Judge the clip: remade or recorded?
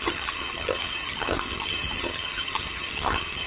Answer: remade